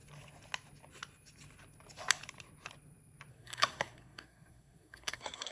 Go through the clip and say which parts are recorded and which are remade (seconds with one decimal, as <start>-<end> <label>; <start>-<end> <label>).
0.0-3.3 recorded; 3.3-5.5 remade